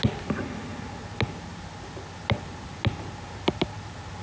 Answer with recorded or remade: recorded